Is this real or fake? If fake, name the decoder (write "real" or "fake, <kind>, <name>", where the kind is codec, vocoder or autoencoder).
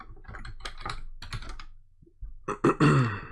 real